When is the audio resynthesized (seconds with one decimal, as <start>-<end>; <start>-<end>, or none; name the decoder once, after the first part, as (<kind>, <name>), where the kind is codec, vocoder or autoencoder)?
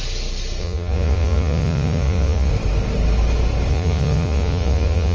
0.6-2.5 (vocoder, Vocos); 3.7-5.1